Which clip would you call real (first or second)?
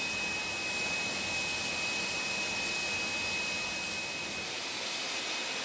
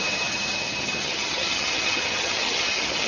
first